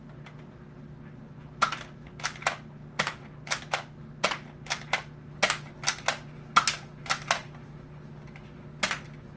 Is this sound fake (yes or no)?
no